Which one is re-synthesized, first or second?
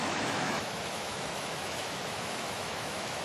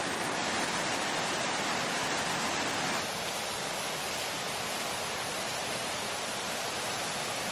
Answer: first